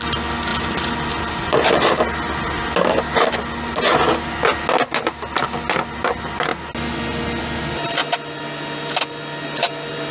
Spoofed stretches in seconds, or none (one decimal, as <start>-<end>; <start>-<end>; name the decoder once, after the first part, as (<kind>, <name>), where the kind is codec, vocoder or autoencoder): none